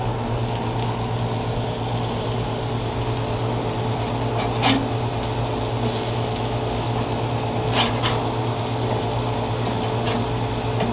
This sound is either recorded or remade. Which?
recorded